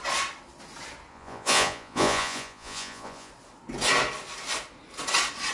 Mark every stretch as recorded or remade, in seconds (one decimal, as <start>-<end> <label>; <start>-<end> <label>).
0.0-1.1 recorded; 1.1-3.3 remade; 3.3-5.5 recorded